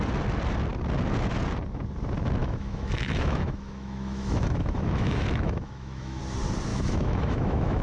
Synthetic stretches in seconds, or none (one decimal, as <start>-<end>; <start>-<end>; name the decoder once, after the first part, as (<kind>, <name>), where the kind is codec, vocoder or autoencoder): 2.4-6.2 (autoencoder, DAC-VAE); 6.7-7.8